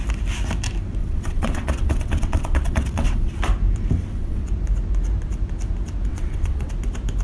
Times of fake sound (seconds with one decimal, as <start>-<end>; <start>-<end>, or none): 1.0-3.4; 4.0-4.5; 6.1-6.7